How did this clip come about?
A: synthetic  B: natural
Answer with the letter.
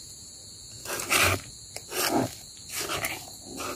B